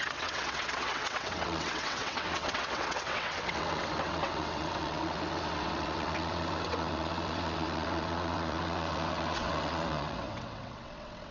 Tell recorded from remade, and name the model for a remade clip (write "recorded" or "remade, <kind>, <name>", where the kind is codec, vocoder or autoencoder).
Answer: remade, vocoder, WaveNeXt